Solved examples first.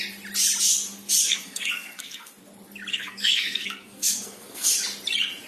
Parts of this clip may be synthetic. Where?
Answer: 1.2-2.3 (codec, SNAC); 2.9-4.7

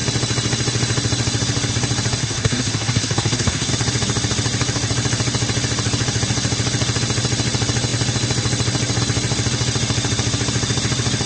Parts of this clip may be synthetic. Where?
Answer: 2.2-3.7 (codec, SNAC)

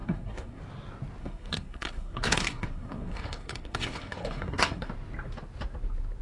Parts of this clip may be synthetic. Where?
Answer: 0.0-0.6 (codec, SNAC); 1.2-4.9

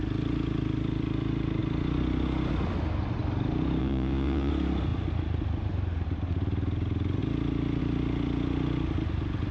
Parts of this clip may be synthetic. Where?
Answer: 3.8-4.5 (vocoder, Vocos)